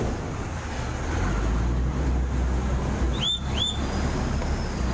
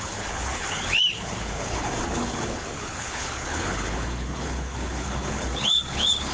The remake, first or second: second